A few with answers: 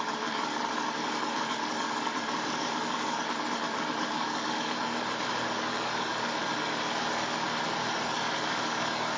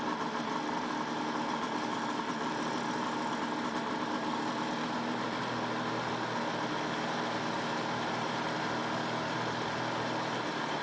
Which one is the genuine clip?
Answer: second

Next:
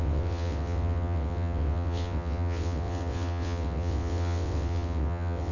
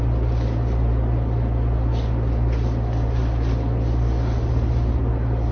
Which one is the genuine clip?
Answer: second